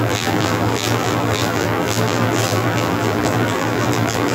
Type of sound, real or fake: fake